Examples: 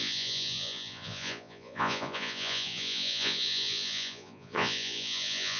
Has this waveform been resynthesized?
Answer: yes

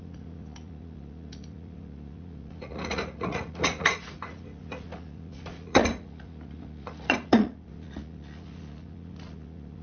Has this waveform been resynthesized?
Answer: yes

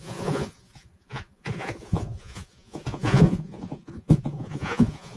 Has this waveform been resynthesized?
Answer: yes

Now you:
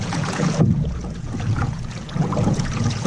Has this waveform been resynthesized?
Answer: yes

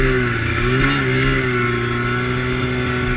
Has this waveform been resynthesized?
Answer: no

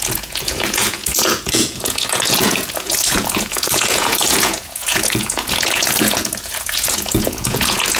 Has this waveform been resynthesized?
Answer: yes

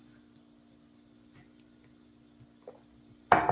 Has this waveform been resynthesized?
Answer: no